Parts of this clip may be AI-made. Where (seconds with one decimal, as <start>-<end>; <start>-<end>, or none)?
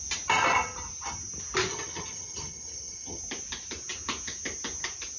1.7-3.2